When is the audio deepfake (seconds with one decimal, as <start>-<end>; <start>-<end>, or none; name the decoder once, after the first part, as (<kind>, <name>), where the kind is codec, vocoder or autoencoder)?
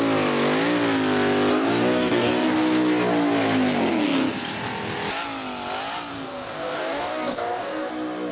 1.5-2.5 (codec, DAC); 6.1-7.9